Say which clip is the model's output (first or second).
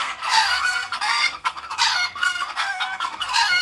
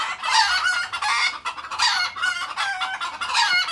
first